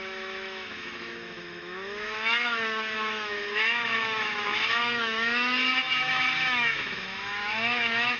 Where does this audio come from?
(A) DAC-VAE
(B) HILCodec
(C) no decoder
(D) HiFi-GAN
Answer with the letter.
A